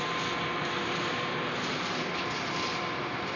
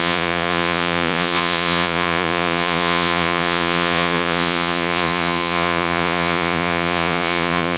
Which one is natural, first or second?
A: first